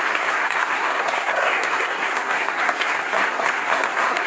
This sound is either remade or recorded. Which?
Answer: remade